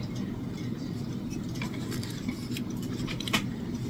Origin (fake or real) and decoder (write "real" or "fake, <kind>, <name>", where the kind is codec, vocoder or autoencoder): fake, vocoder, BigVGAN v2